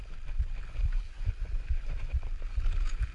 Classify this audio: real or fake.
real